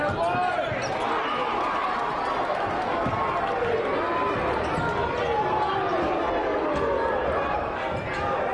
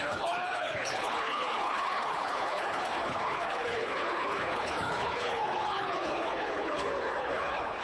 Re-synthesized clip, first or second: second